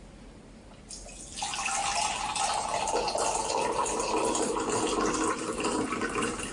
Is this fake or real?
real